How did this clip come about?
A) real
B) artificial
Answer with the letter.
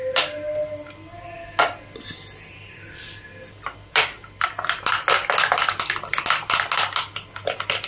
A